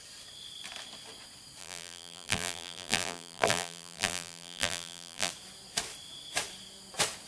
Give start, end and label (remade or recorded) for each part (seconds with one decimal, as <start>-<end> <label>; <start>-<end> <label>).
0.0-1.6 recorded; 1.6-5.3 remade; 5.3-7.3 recorded